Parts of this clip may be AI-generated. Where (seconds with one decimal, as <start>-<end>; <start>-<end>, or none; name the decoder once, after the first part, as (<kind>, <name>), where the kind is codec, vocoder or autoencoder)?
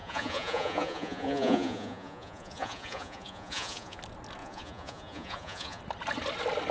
0.0-4.0 (vocoder, Vocos); 4.4-5.8